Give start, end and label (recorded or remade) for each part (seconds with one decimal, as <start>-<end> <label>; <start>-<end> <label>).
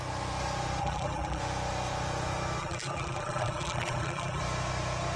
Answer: 0.0-0.8 recorded; 0.8-1.4 remade; 1.4-2.6 recorded; 2.6-4.4 remade; 4.4-5.2 recorded